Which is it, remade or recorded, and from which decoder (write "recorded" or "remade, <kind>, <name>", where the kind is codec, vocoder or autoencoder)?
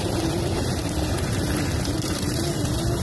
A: remade, vocoder, BigVGAN v2